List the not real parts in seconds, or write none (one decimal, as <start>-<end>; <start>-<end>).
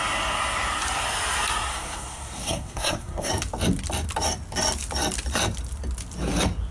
1.7-3.3